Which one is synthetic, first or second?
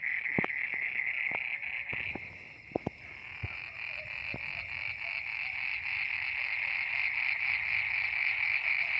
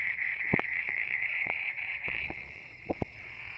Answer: second